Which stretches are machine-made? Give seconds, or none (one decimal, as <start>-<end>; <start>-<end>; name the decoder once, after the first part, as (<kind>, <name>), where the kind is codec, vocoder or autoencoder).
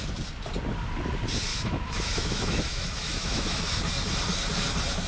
1.5-3.6 (autoencoder, DAC-VAE)